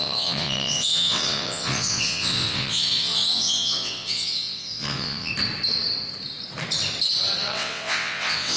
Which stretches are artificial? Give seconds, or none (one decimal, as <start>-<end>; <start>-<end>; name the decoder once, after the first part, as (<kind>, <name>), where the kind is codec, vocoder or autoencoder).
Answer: 0.0-5.3 (vocoder, WaveNeXt); 7.4-8.6